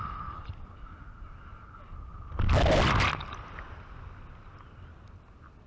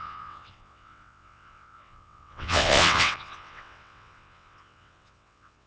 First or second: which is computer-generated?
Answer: second